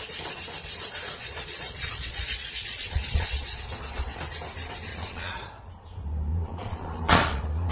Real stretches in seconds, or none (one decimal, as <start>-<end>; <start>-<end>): 0.0-1.2; 4.2-4.9; 5.7-6.3